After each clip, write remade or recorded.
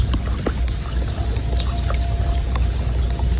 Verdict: recorded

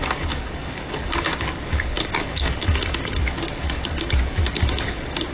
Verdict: remade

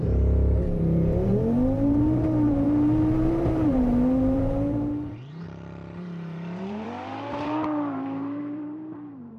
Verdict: remade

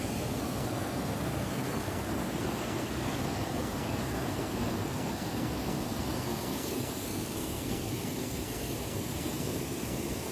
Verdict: remade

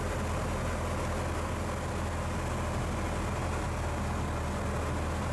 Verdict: recorded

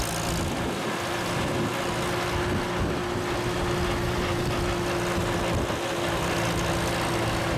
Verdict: recorded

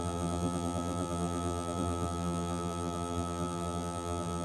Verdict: remade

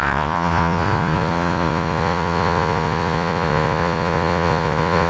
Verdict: remade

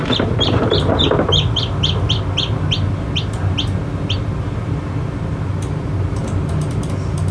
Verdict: recorded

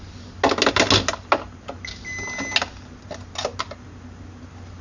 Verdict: recorded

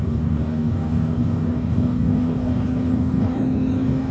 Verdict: remade